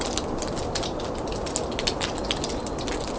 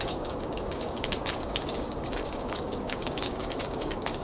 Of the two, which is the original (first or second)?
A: first